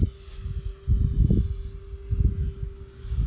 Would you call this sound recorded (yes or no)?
yes